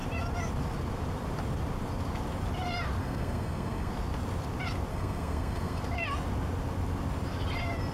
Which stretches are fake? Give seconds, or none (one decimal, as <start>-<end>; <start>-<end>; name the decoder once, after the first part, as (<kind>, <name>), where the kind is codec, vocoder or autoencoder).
3.0-3.9 (codec, SNAC); 4.9-5.8